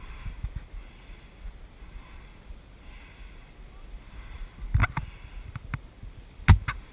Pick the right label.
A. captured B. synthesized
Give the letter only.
A